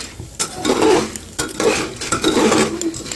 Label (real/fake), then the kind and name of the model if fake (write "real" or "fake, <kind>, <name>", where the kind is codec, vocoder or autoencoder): real